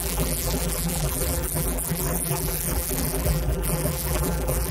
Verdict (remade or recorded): remade